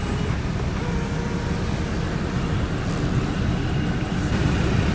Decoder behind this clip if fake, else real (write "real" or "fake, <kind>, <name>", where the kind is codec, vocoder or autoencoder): real